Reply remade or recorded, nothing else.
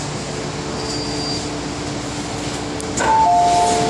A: recorded